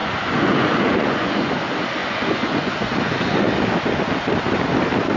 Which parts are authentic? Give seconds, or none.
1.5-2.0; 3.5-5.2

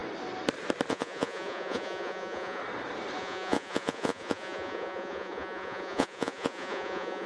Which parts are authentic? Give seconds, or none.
0.0-0.9; 2.6-3.2